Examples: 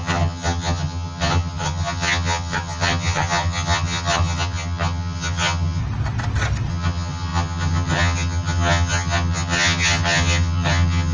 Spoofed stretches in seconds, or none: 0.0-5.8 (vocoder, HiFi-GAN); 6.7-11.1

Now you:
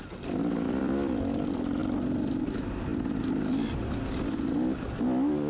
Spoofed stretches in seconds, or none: none

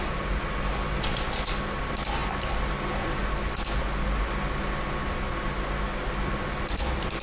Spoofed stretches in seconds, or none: none

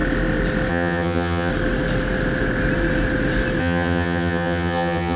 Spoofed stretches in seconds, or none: 0.7-1.5 (vocoder, HiFi-GAN); 3.6-5.2

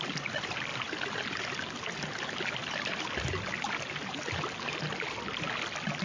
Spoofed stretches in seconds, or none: none

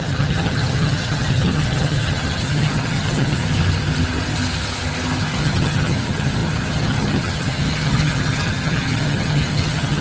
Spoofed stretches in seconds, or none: 0.0-3.4 (vocoder, HiFi-GAN); 5.4-10.0

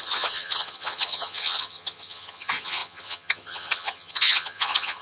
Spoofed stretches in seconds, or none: 0.0-5.0 (vocoder, HiFi-GAN)

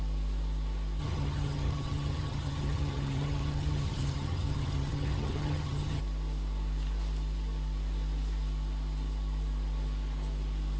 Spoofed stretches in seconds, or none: 1.0-6.0 (vocoder, HiFi-GAN)